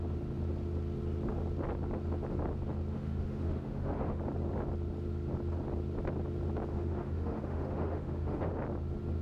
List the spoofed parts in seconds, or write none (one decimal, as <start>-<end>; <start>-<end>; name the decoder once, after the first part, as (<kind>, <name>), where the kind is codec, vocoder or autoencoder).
2.9-4.2 (autoencoder, DAC-VAE); 6.7-8.5